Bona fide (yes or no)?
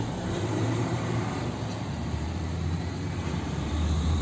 no